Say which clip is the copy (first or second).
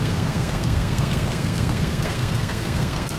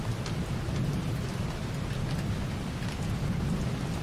first